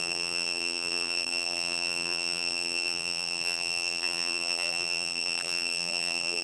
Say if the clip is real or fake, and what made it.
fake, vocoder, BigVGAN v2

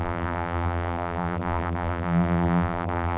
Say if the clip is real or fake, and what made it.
fake, vocoder, BigVGAN v2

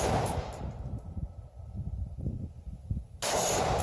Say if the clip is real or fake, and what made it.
fake, vocoder, BigVGAN v2